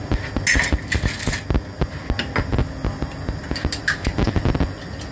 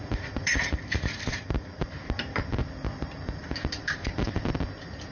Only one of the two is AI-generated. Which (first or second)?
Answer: second